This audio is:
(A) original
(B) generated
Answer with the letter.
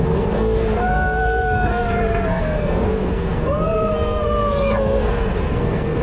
B